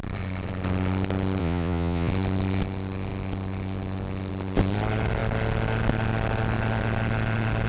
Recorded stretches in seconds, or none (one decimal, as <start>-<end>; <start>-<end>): 0.0-1.4; 2.1-7.7